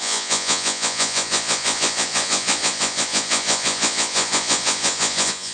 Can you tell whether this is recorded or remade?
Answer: remade